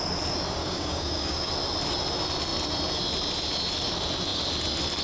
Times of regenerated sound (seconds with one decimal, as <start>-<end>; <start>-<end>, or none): 0.6-1.5